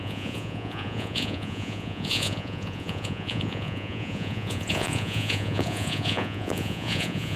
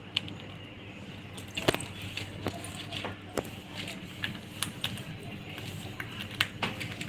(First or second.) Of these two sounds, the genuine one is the second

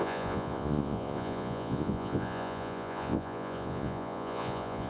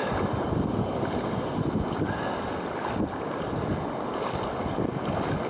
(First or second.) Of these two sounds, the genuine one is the second